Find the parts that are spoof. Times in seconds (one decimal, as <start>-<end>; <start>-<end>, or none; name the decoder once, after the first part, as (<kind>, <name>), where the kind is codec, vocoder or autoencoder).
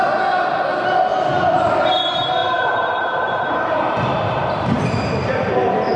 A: 1.1-2.0 (vocoder, BigVGAN v2); 2.4-5.5